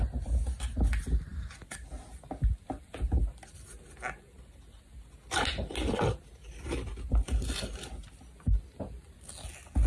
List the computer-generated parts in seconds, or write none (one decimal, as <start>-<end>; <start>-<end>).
none